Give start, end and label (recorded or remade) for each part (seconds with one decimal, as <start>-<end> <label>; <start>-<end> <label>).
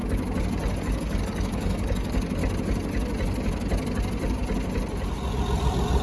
0.0-0.8 recorded; 0.8-2.4 remade; 2.4-6.0 recorded